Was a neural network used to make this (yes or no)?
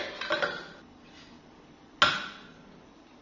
no